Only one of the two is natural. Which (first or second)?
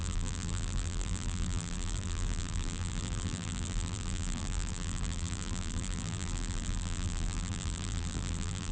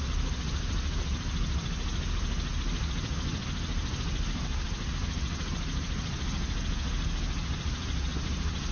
second